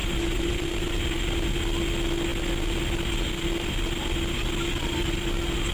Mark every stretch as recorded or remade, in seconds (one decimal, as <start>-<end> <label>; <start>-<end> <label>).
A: 0.0-0.9 remade; 0.9-5.7 recorded